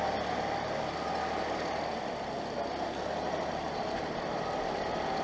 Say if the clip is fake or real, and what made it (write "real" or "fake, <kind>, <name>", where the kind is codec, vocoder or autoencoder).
real